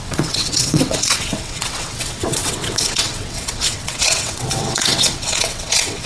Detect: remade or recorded remade